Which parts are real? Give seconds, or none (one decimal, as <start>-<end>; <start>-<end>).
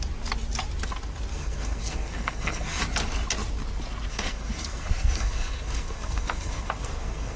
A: 0.0-1.3; 2.8-4.1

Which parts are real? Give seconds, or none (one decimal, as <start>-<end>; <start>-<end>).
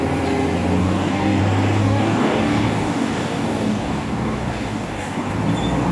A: 0.0-0.8; 1.4-1.8; 5.3-5.9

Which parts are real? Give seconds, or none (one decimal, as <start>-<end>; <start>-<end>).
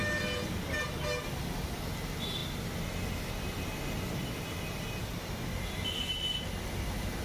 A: 0.0-7.2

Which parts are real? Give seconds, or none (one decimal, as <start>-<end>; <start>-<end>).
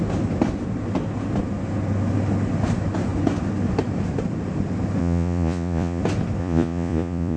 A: 0.0-5.0; 6.0-6.4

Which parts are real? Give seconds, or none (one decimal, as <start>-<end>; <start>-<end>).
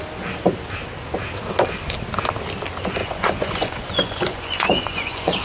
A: 0.0-3.0